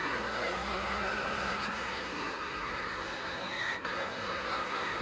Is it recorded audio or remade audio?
remade